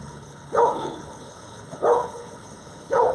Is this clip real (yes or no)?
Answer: no